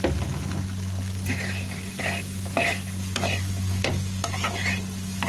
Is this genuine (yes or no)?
yes